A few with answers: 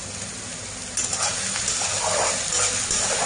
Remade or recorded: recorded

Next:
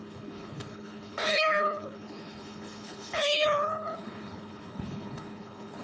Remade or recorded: remade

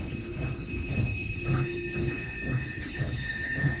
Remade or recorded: remade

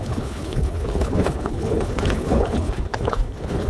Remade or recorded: remade